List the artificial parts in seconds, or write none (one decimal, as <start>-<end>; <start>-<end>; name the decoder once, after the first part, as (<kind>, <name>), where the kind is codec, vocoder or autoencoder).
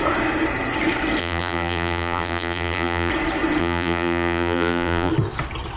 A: 1.2-3.1 (vocoder, BigVGAN v2); 3.6-5.1